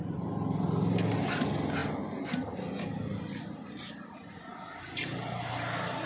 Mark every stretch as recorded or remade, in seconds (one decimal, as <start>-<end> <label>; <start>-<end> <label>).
0.0-6.1 recorded